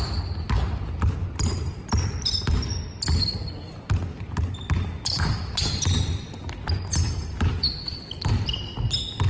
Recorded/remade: recorded